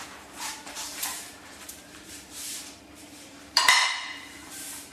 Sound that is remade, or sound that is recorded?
remade